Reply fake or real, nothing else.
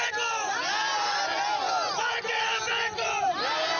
real